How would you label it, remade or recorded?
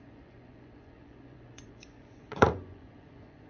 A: remade